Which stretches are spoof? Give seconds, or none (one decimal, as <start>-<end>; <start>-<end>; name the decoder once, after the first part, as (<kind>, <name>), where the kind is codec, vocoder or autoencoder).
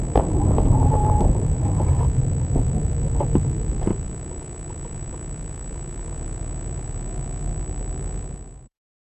0.0-7.5 (vocoder, Vocos); 8.0-9.1